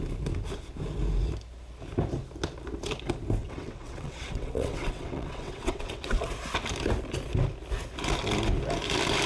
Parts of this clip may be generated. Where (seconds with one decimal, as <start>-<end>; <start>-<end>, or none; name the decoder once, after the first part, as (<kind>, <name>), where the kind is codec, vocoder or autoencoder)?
3.4-6.2 (vocoder, WaveNeXt)